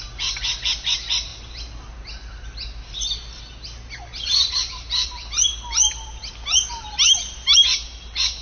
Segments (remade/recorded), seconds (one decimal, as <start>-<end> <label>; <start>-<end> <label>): 0.0-8.4 recorded